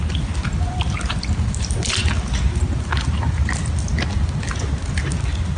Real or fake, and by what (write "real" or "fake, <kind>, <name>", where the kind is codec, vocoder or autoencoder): real